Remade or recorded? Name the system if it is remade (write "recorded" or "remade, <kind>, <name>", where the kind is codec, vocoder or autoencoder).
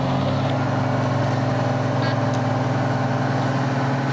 recorded